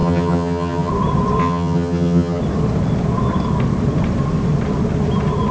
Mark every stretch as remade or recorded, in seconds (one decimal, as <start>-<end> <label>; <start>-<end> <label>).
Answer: 0.0-0.9 remade; 0.9-1.4 recorded; 1.4-2.4 remade; 2.4-5.5 recorded